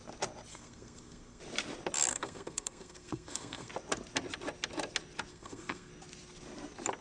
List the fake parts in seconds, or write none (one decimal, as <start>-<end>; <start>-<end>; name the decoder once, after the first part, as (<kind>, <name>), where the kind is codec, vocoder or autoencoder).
0.5-1.4 (codec, SNAC); 2.1-3.7; 5.3-5.9